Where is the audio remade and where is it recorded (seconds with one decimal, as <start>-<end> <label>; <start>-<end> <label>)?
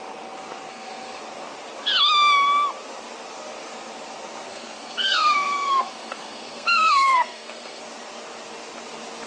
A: 0.0-0.7 recorded; 0.7-1.2 remade; 1.2-4.5 recorded; 4.5-7.8 remade; 7.8-9.3 recorded